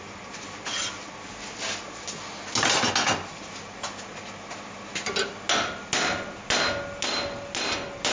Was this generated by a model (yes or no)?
no